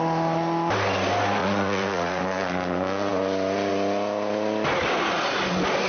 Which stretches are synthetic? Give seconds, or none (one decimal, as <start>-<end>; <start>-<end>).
1.4-2.2

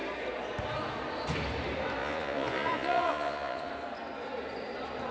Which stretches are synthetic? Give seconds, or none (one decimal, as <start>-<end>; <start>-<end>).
2.0-3.7

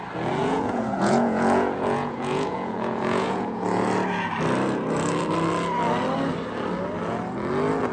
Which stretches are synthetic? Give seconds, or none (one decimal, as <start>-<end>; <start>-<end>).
0.4-3.6

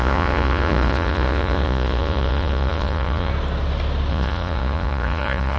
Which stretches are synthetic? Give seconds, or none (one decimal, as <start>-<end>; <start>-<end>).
0.0-3.3; 4.1-5.6

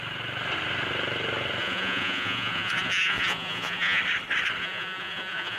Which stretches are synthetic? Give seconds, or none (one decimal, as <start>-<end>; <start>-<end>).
1.6-4.0; 4.6-5.6

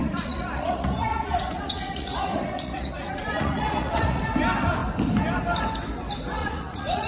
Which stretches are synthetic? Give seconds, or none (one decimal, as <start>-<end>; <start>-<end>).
0.0-4.2; 6.4-7.1

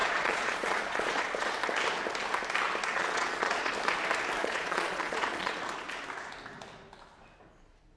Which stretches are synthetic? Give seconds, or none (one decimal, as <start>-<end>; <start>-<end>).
0.0-1.5; 2.9-3.7; 4.4-5.5

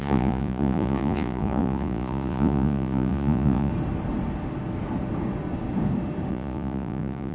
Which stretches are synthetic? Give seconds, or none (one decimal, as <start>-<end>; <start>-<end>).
0.0-3.7; 6.3-7.3